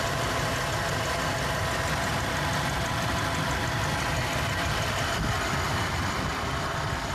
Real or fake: fake